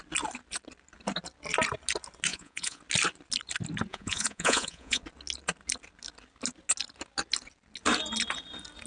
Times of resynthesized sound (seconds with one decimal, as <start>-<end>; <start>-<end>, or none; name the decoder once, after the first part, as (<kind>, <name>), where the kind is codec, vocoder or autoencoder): 2.3-2.8 (vocoder, Vocos); 3.9-5.0